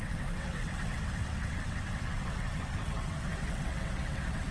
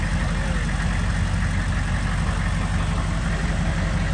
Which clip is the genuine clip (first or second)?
second